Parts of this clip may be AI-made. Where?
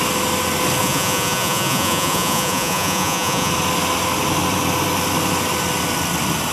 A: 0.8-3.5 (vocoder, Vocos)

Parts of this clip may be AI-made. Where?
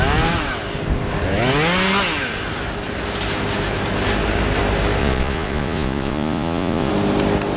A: 5.0-6.9 (vocoder, Vocos)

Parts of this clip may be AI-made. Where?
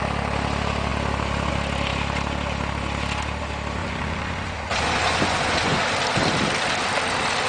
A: 3.8-5.8 (vocoder, Vocos)